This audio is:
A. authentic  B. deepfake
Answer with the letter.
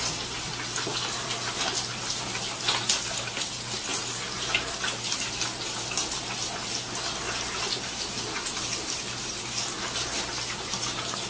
A